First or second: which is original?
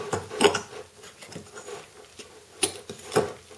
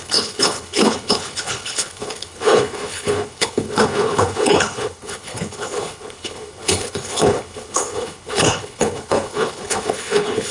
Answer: first